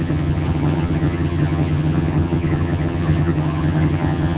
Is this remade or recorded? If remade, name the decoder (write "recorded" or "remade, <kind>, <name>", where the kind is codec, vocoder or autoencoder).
remade, vocoder, HiFi-GAN